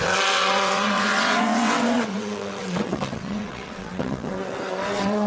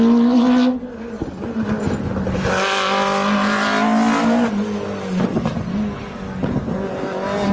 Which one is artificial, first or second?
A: first